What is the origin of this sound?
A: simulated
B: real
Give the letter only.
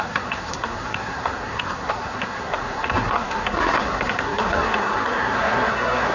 A